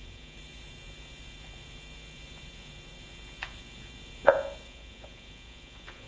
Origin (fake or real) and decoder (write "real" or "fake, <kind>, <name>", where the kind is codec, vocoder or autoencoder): fake, vocoder, Vocos